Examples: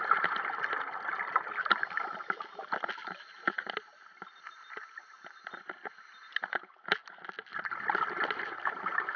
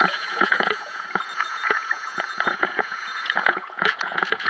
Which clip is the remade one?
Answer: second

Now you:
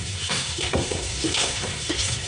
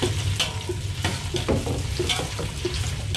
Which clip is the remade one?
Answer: first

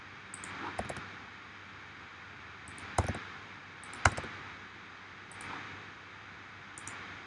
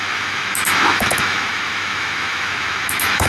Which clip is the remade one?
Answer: second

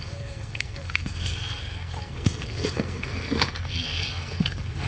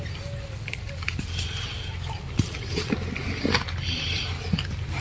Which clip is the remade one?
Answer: first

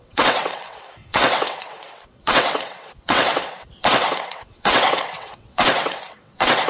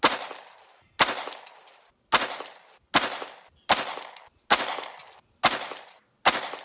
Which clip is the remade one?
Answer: first